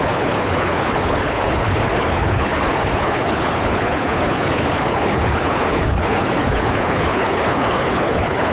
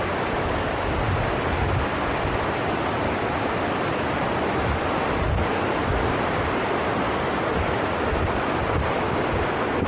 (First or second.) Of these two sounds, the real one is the second